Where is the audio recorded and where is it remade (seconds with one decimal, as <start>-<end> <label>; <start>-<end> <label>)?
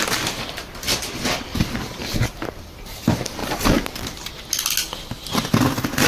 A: 0.0-2.0 recorded; 2.0-2.9 remade; 2.9-3.4 recorded; 3.4-4.3 remade; 4.3-6.1 recorded